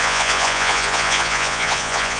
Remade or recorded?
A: remade